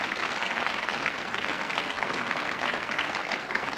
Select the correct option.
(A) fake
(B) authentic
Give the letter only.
A